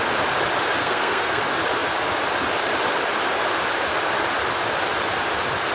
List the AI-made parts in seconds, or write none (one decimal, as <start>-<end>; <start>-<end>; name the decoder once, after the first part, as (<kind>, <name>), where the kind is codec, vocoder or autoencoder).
0.8-1.4 (codec, SNAC)